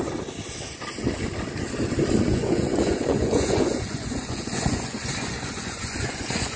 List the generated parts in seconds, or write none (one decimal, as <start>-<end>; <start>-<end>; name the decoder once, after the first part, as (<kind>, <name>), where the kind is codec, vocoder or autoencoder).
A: 2.3-6.6 (vocoder, Vocos)